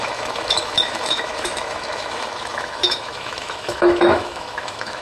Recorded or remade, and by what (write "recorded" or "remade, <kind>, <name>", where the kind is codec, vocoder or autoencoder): remade, autoencoder, DAC-VAE